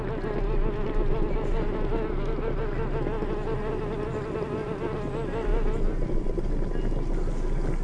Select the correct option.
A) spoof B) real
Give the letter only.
B